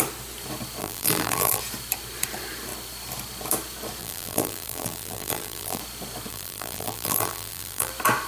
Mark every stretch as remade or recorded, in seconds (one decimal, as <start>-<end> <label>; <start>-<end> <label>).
0.0-0.8 recorded; 0.8-1.6 remade; 1.6-4.0 recorded; 4.0-5.8 remade; 5.8-6.3 recorded; 6.3-7.9 remade; 7.9-8.3 recorded